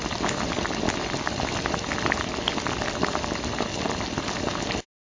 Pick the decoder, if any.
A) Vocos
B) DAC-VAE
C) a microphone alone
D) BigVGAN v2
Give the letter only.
C